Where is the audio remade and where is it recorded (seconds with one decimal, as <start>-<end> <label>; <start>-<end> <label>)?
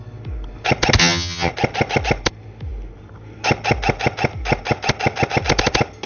0.0-1.0 recorded; 1.0-1.5 remade; 1.5-6.1 recorded